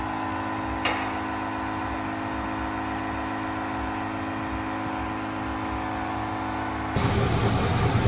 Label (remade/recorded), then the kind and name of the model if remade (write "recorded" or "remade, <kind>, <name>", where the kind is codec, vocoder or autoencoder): recorded